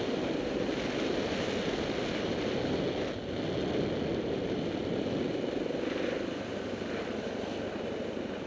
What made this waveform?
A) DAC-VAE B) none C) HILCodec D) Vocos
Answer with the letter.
B